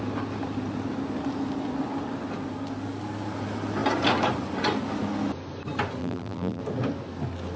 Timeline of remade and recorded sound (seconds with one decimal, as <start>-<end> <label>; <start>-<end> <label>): 0.0-6.0 recorded; 6.0-6.6 remade; 6.6-7.6 recorded